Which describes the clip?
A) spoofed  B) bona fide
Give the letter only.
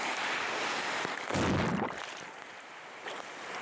B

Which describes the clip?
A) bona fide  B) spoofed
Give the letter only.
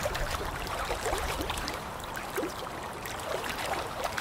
B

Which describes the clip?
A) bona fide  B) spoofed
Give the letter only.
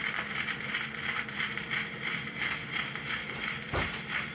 B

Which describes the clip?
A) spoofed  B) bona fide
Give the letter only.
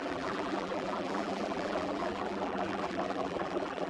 A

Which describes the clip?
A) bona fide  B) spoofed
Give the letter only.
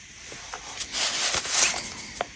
B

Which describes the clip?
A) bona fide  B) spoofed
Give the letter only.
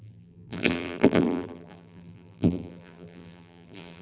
B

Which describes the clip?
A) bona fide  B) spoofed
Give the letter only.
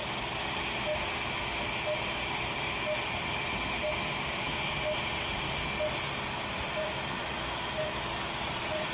A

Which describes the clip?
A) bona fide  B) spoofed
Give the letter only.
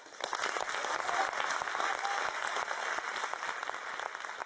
A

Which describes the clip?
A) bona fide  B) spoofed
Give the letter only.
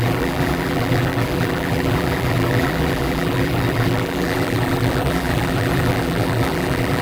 B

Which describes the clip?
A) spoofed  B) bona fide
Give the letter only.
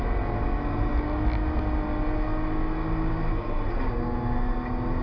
B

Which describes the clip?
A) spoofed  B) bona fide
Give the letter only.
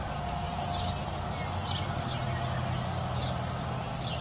B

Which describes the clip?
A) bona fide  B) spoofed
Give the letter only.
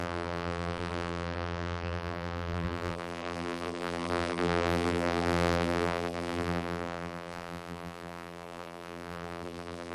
B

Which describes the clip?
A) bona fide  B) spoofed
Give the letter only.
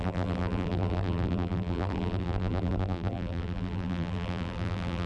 B